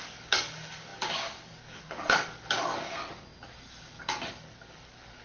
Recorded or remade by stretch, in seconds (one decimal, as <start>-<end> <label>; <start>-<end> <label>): 0.0-3.0 remade; 3.0-4.3 recorded; 4.3-5.2 remade